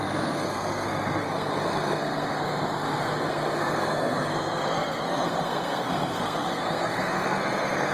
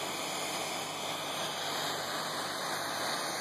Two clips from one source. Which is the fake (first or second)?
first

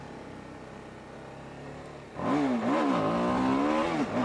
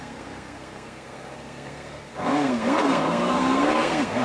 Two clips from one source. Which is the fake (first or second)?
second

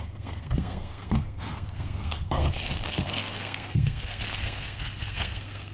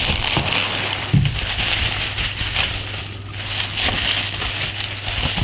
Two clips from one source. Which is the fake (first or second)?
first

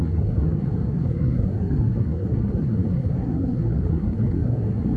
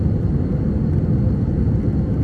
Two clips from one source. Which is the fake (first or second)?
first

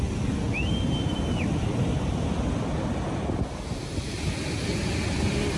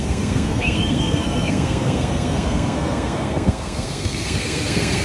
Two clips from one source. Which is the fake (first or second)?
second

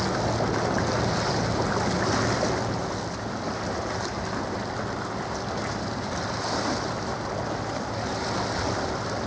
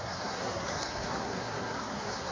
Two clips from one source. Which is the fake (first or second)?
second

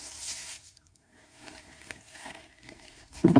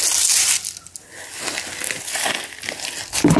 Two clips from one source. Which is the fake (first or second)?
first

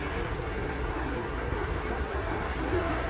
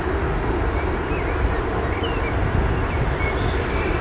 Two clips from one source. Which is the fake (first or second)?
first